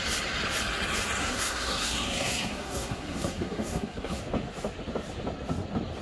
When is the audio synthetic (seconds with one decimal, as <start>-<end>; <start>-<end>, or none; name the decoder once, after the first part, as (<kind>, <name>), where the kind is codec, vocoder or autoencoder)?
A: 1.2-4.2 (codec, SNAC)